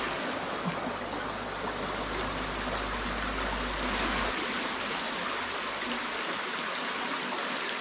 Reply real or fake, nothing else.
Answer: real